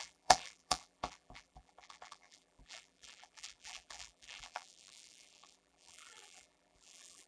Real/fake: fake